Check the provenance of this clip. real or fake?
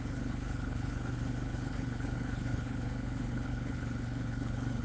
fake